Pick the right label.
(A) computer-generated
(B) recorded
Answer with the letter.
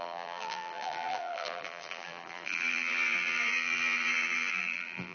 A